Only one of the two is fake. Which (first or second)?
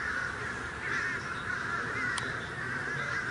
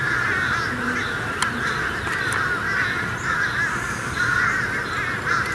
first